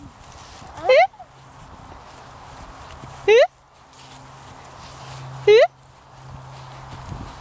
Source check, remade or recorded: recorded